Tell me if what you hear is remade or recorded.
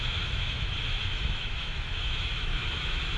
remade